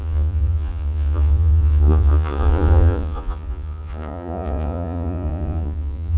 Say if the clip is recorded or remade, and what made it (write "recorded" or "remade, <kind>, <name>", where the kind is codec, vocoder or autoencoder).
remade, vocoder, Vocos